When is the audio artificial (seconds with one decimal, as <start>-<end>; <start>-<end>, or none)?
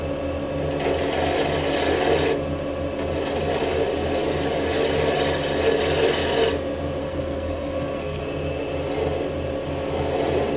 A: 7.0-8.2